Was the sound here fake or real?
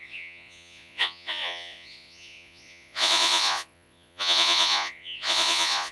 fake